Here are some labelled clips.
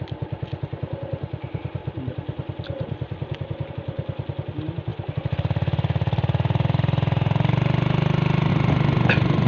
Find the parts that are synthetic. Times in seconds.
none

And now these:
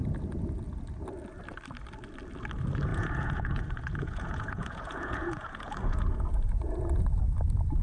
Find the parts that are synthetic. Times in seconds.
2.9-7.0

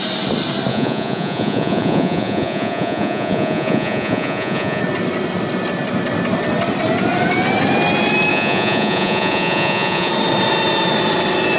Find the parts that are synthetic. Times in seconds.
0.7-4.8; 8.3-10.1

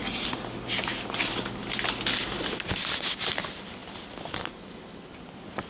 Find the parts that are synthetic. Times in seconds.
none

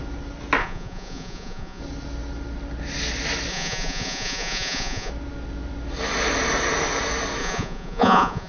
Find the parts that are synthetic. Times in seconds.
0.6-1.8; 3.5-5.1; 7.4-8.5

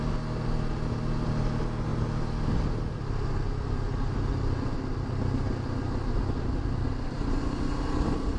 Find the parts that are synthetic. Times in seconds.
none

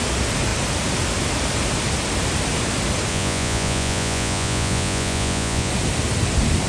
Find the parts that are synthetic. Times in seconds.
3.1-5.7